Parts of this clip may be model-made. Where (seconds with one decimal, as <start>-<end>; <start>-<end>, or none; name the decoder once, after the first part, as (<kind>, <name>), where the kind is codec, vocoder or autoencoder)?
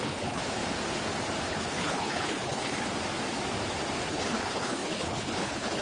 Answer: 0.0-0.4 (codec, HILCodec); 1.5-2.9; 4.1-5.8